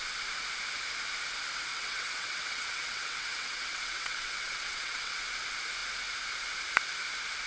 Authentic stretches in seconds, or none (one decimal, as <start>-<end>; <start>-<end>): 0.0-1.7; 5.2-7.5